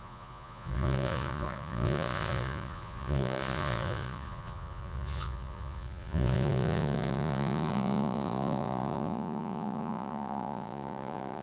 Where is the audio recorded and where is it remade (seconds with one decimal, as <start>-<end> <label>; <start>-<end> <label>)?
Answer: 0.0-11.4 remade